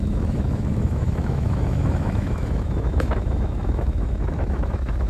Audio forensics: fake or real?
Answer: fake